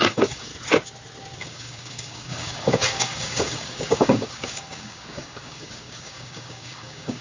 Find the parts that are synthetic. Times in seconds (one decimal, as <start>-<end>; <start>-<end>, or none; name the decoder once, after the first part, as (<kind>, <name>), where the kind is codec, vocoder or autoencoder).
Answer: 0.0-0.5 (codec, DAC); 1.4-7.2